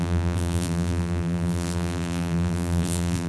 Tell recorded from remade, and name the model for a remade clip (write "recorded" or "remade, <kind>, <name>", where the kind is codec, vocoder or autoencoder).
remade, vocoder, BigVGAN v2